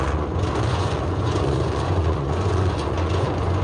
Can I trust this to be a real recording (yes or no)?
no